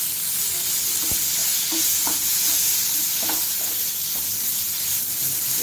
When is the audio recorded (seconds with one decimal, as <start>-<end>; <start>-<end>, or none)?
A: 0.0-1.4; 3.9-5.6